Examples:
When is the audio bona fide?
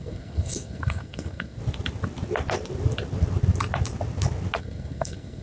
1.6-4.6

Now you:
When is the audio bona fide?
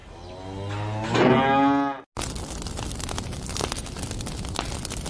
0.0-5.1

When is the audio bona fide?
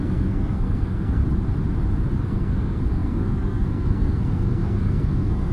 1.2-2.2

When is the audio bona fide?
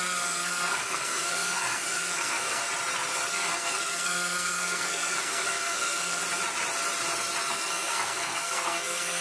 2.6-3.3; 6.2-7.5